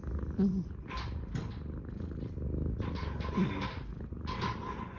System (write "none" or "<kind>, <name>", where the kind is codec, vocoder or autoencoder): none